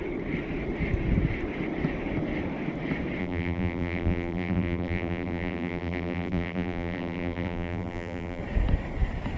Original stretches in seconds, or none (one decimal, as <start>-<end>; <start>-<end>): 0.0-3.2; 8.4-9.4